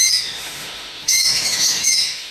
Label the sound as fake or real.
fake